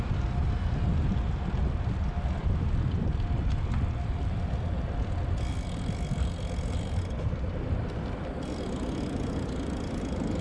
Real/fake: real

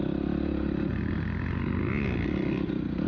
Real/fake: real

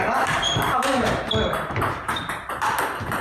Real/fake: real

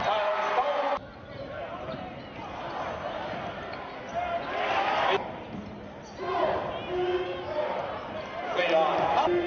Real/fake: real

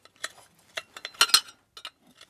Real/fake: real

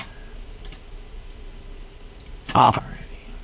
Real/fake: real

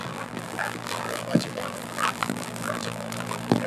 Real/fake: fake